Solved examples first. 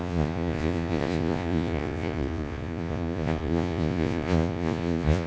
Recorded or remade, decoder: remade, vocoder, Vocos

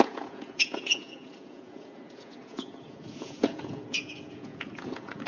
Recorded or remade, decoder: remade, vocoder, Vocos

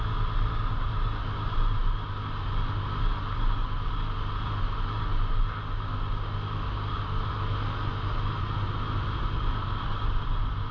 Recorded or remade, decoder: recorded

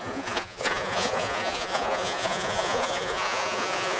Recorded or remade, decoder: remade, vocoder, Vocos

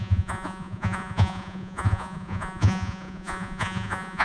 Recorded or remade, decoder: remade, vocoder, Vocos